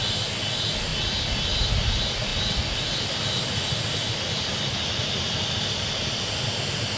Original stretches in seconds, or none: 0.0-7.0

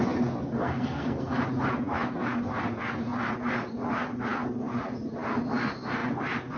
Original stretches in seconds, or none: 0.0-0.6; 1.4-6.6